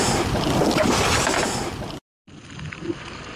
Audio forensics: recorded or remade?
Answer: recorded